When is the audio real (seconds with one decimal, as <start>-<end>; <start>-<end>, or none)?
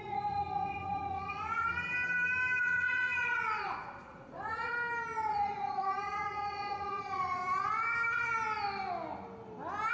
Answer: 1.7-2.6; 4.7-5.3; 7.4-9.9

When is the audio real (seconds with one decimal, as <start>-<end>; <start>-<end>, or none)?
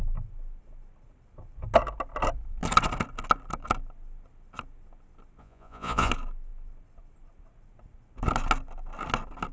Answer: 0.0-5.4; 6.1-9.5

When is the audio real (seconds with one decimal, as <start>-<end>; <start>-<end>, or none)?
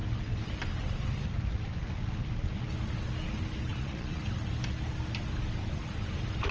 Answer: 0.0-3.7; 4.2-6.5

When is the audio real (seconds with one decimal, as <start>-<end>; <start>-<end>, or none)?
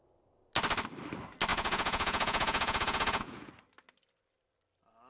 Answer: 0.0-1.5; 3.5-5.1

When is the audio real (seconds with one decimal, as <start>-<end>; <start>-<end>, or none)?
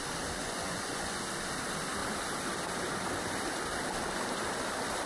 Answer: 0.0-0.4; 1.2-5.1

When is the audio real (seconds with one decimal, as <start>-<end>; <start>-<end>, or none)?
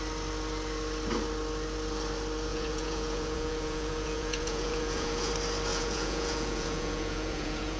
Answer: 0.0-2.5; 5.3-5.7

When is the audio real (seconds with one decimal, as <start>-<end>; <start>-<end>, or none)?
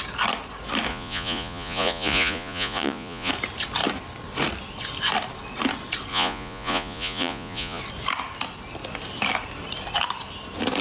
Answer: 0.0-0.9; 3.3-6.1; 7.8-10.8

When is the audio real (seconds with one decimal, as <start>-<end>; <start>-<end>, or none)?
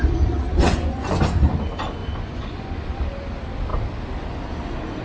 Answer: 0.0-0.5; 1.2-2.0; 3.0-5.0